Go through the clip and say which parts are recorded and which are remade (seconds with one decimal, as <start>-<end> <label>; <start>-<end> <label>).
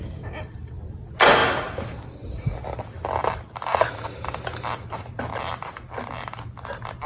0.0-7.1 recorded